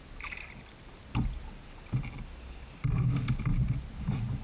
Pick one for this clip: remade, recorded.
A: recorded